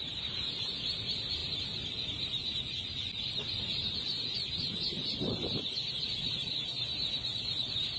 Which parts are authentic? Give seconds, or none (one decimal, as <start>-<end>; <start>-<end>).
0.0-8.0